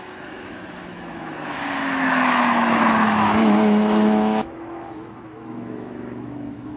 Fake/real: fake